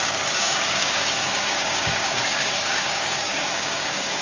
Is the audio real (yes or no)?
no